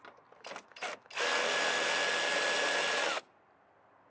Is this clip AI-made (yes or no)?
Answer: no